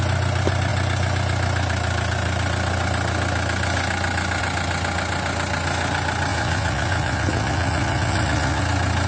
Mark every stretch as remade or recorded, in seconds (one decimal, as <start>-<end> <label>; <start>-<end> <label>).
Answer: 0.0-6.3 recorded; 6.3-8.6 remade; 8.6-9.1 recorded